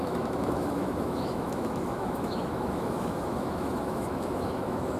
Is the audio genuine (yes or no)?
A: no